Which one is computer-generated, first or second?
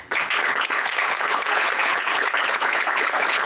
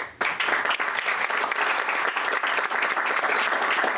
first